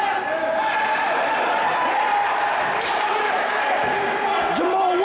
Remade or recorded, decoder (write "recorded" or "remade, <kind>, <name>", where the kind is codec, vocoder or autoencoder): recorded